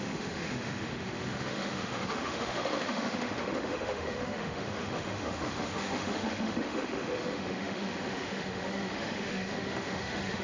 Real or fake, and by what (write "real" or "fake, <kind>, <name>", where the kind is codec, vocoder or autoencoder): fake, autoencoder, DAC-VAE